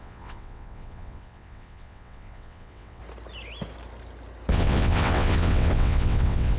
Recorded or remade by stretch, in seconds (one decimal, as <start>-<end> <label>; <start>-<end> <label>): 0.0-3.0 remade; 3.0-4.5 recorded; 4.5-6.6 remade